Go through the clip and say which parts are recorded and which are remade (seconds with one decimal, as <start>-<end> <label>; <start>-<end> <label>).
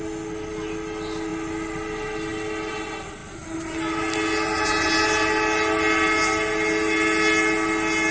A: 0.0-8.1 recorded